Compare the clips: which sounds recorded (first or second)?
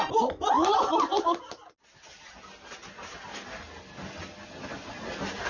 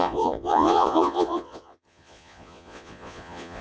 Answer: first